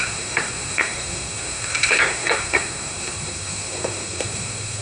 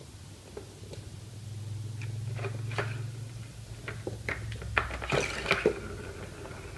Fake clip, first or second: first